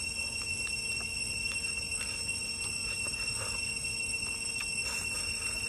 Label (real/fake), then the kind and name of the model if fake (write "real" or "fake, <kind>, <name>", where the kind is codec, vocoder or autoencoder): real